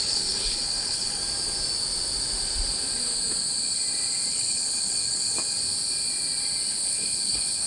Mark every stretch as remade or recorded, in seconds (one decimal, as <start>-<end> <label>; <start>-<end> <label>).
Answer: 0.0-1.2 remade; 1.2-4.3 recorded; 4.3-5.4 remade; 5.4-6.7 recorded; 6.7-7.7 remade